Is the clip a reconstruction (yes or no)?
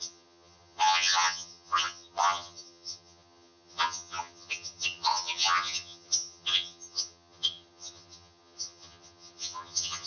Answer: yes